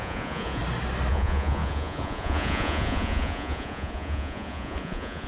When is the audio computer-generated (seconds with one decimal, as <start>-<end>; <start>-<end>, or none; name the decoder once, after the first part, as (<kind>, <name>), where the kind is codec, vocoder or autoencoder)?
0.0-0.6 (vocoder, Vocos); 1.1-5.3